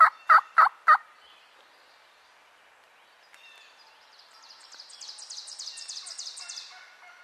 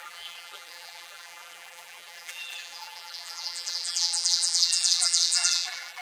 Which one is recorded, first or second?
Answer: first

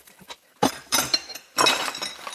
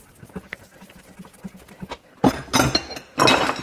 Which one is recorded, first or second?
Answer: second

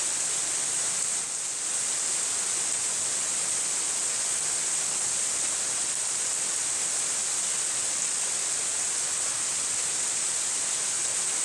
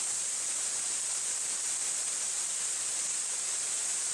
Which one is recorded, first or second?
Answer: first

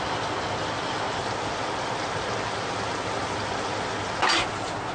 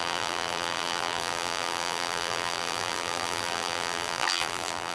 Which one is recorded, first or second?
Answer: first